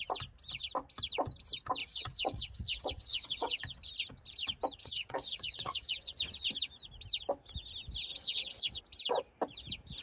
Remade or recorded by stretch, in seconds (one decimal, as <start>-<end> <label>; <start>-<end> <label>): 0.0-1.8 recorded; 1.8-3.6 remade; 3.6-4.8 recorded; 4.8-6.1 remade; 6.1-8.1 recorded; 8.1-8.8 remade; 8.8-10.0 recorded